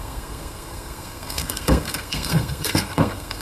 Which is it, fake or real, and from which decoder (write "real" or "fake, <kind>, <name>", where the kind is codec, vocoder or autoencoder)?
fake, codec, SNAC